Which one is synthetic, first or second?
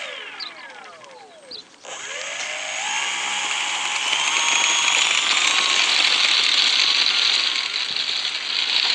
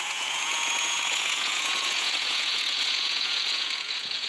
second